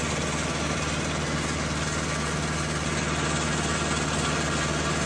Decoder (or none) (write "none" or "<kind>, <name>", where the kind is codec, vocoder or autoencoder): none